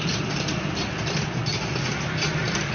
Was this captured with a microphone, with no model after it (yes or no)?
yes